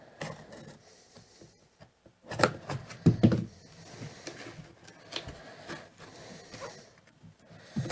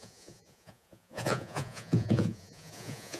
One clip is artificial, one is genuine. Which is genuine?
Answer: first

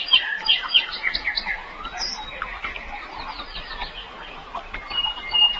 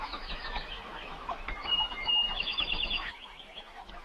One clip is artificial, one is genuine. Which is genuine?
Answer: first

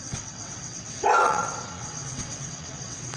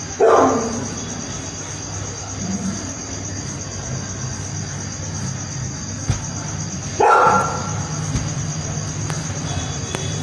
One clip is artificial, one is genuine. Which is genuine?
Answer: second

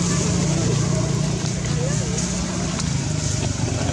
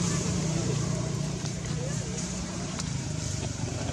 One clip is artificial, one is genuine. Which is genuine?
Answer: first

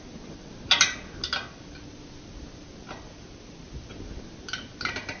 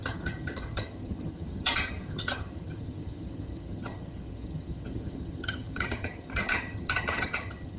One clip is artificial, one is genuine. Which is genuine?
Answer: first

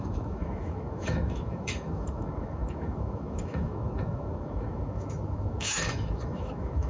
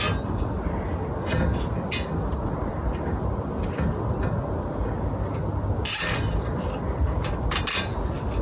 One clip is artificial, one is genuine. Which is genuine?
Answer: second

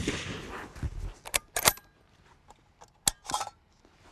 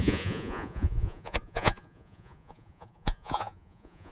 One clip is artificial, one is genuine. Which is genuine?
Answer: first